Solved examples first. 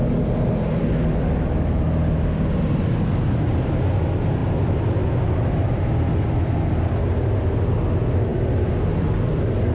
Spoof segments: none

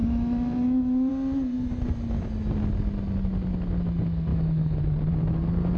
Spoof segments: 0.0-1.1 (autoencoder, DAC-VAE); 4.3-4.8

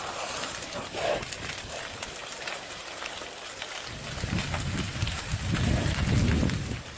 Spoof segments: none

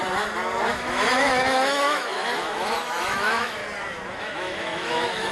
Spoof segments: 0.7-3.6 (autoencoder, DAC-VAE); 4.2-5.3

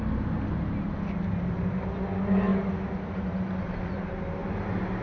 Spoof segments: none